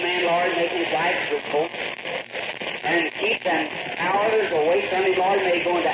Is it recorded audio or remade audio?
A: recorded